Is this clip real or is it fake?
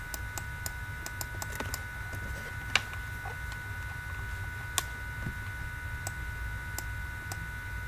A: real